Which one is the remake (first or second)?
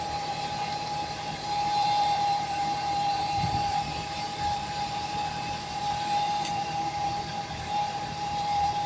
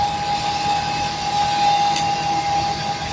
first